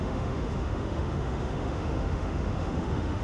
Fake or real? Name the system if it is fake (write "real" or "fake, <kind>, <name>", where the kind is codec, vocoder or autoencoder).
fake, autoencoder, DAC-VAE